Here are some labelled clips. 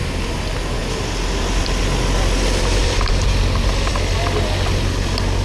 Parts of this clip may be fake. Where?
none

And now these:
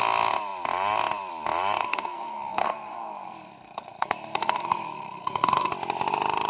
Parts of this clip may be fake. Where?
1.8-5.7 (codec, SNAC)

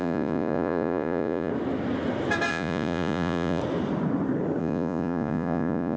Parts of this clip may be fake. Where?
0.0-1.5 (vocoder, Vocos); 2.5-3.6; 4.6-6.0

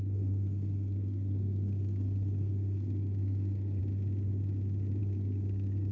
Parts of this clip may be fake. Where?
0.0-3.8 (codec, SNAC); 5.0-5.9

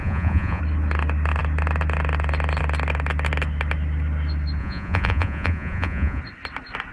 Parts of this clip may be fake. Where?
0.0-0.6 (vocoder, Vocos); 4.6-6.2

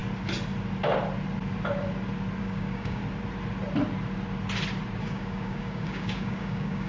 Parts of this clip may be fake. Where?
2.4-3.0 (codec, DAC); 5.0-6.9